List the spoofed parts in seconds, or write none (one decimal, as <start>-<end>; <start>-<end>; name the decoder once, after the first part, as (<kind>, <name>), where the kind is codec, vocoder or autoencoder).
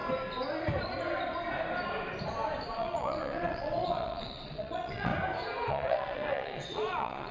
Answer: 2.7-5.1 (vocoder, WaveNeXt); 5.7-7.3